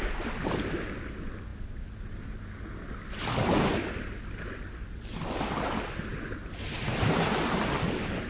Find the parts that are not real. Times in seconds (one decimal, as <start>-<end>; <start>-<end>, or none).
none